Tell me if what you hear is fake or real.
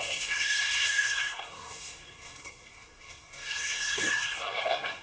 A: fake